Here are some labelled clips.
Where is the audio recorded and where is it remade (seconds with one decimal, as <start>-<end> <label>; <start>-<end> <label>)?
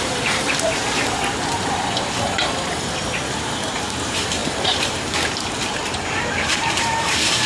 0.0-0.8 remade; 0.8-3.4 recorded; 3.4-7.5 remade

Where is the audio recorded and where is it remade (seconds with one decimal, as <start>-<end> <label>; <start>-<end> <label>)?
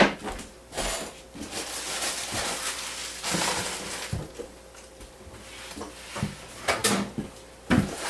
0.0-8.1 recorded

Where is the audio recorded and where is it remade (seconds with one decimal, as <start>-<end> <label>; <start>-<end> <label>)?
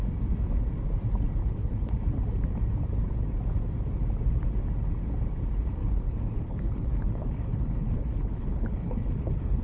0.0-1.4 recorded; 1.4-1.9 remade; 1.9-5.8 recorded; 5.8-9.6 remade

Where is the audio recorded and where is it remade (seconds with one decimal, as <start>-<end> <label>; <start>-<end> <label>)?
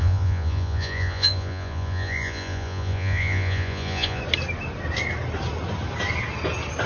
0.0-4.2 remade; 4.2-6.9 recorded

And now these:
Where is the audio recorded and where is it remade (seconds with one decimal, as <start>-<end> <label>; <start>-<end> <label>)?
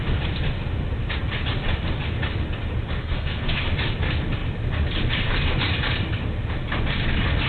0.0-3.0 recorded; 3.0-3.6 remade; 3.6-7.5 recorded